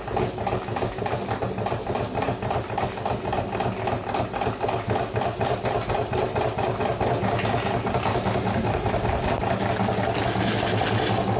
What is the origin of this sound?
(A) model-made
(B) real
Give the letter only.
B